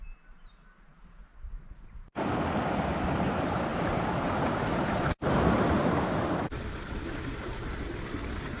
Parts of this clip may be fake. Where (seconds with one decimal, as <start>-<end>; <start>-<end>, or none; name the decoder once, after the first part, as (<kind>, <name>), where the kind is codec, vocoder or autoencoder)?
3.7-6.6 (vocoder, BigVGAN v2)